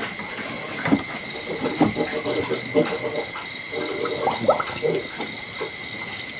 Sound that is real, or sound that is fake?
real